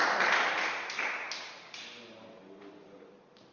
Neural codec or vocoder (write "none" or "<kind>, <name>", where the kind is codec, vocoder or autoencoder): none